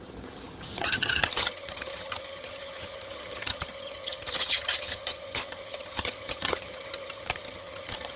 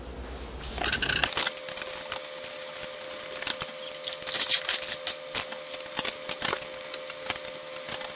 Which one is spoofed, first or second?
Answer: first